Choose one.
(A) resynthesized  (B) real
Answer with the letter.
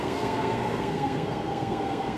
A